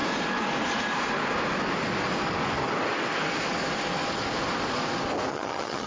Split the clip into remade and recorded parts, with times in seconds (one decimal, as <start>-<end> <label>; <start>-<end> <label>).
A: 0.0-5.3 recorded; 5.3-5.9 remade

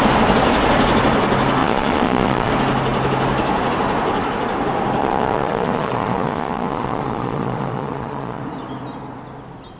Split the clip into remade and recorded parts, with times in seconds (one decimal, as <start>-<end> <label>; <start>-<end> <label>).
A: 0.0-1.6 recorded; 1.6-2.5 remade; 2.5-5.0 recorded; 5.0-8.4 remade; 8.4-9.8 recorded

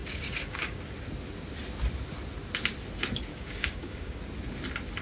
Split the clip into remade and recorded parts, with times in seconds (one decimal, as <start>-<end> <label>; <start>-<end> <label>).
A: 0.0-0.8 remade; 0.8-3.3 recorded; 3.3-4.2 remade; 4.2-5.0 recorded

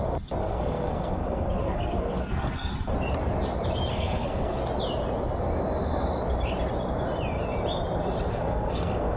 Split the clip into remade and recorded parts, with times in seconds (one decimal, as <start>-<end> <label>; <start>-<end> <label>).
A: 0.0-0.4 recorded; 0.4-2.7 remade; 2.7-3.9 recorded; 3.9-4.6 remade; 4.6-8.3 recorded; 8.3-9.2 remade

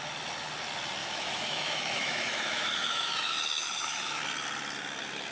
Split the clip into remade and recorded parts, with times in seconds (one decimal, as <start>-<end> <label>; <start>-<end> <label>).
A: 0.0-1.0 recorded; 1.0-4.2 remade; 4.2-5.3 recorded